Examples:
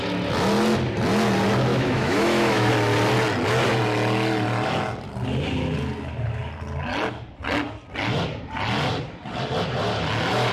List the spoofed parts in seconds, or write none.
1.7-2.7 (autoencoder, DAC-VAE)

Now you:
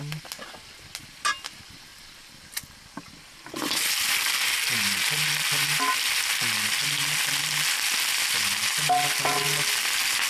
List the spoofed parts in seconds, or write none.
none

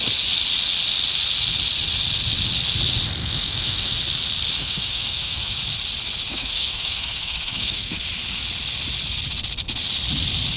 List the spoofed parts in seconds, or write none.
3.2-4.0 (autoencoder, DAC-VAE); 4.6-5.6; 6.3-8.0

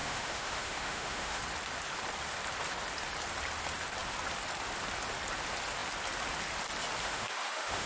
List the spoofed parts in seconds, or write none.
0.0-1.4 (autoencoder, DAC-VAE); 7.0-7.9

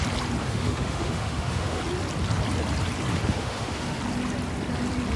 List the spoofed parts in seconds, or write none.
0.4-1.8 (autoencoder, DAC-VAE); 3.1-4.0